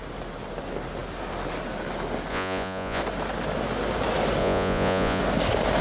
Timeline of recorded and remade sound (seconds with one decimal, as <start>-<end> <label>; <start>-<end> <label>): 0.0-2.3 recorded; 2.3-3.0 remade; 3.0-4.4 recorded; 4.4-5.2 remade; 5.2-5.8 recorded